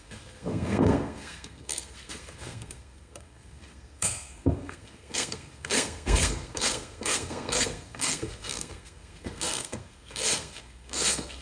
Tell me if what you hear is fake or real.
fake